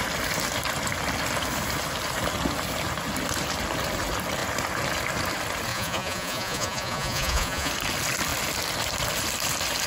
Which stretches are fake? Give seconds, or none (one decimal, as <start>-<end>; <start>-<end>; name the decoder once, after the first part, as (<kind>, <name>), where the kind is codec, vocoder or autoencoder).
5.7-7.7 (vocoder, Vocos)